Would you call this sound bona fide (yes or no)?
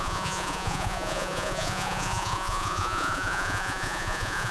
no